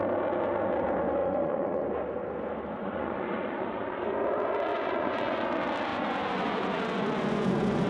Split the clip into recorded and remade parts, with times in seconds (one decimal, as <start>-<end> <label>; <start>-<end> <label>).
0.0-1.2 recorded; 1.2-1.8 remade; 1.8-2.8 recorded; 2.8-4.0 remade; 4.0-4.7 recorded; 4.7-5.5 remade; 5.5-5.9 recorded; 5.9-7.9 remade

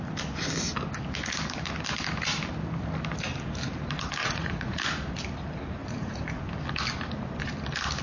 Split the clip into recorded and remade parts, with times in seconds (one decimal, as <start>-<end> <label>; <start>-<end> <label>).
0.0-4.2 recorded; 4.2-4.8 remade; 4.8-5.8 recorded; 5.8-6.5 remade; 6.5-8.0 recorded